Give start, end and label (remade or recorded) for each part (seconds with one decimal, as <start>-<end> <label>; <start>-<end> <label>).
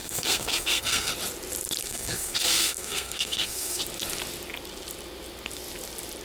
0.0-1.1 remade; 1.1-1.8 recorded; 1.8-3.8 remade; 3.8-6.2 recorded